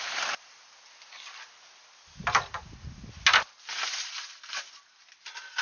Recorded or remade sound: recorded